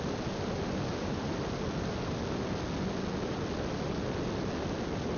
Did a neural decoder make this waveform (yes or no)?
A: no